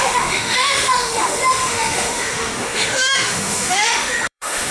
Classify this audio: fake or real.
fake